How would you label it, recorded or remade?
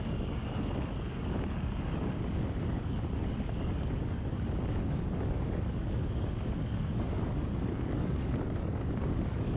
remade